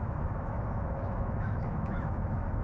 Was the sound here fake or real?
fake